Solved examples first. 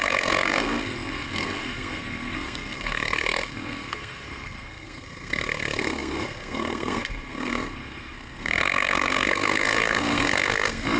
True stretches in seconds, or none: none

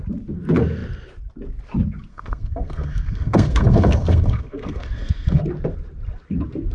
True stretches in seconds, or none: 0.0-2.1; 5.4-6.7

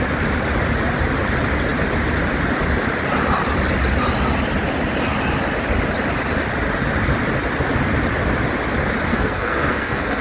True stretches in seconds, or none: 0.0-9.1